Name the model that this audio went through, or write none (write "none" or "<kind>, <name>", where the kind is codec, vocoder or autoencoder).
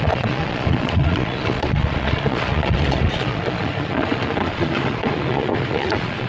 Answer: vocoder, Vocos